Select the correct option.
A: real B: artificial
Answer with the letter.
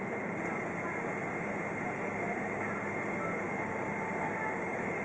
A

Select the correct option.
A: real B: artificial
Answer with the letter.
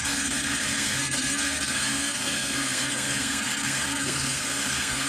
B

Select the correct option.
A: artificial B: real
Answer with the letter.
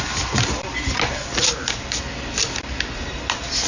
B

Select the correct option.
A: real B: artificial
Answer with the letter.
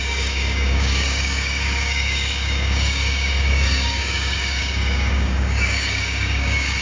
B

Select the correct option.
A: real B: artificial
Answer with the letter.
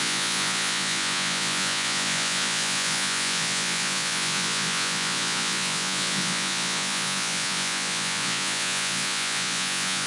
B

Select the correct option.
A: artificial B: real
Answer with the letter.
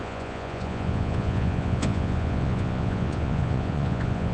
A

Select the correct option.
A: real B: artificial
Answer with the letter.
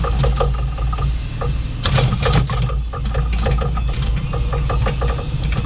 A